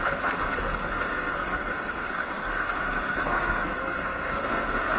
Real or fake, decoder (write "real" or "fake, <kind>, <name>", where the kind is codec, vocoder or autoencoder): fake, codec, SNAC